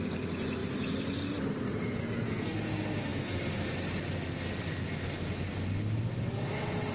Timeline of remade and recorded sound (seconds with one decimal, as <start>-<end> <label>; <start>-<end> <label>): 0.0-2.0 recorded; 2.0-2.6 remade; 2.6-6.9 recorded